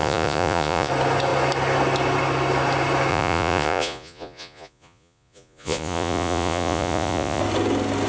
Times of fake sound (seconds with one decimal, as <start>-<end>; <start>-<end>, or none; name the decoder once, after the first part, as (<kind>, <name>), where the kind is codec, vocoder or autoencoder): 0.0-0.9 (vocoder, Vocos); 3.1-7.4